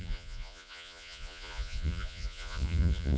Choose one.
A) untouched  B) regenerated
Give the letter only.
B